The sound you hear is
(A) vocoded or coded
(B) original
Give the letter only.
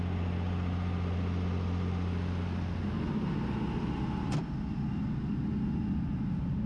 B